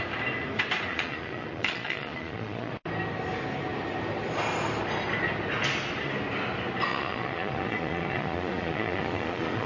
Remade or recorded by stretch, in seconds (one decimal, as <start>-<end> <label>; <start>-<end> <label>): 0.0-0.9 recorded; 0.9-2.7 remade; 2.7-6.9 recorded; 6.9-9.7 remade